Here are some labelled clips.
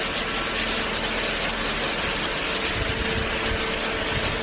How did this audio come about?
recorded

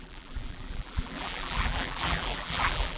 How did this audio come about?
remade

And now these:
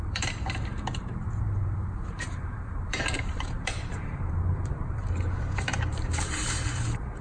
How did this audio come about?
remade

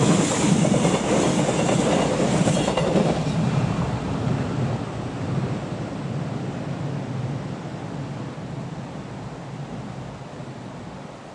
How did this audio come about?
remade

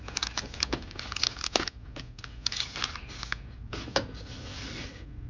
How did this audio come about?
recorded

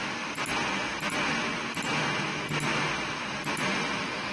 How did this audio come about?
recorded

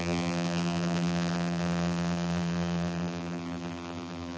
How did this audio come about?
remade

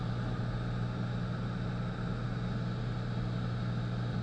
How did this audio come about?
recorded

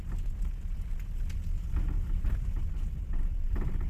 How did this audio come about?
recorded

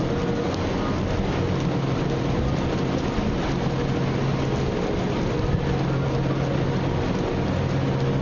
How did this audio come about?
recorded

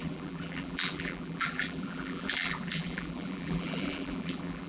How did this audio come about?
remade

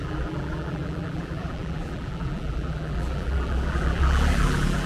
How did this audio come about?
remade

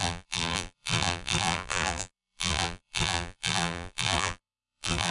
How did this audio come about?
remade